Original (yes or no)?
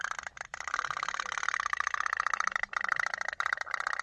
yes